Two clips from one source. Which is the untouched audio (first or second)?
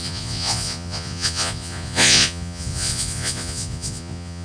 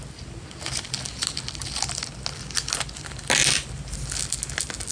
second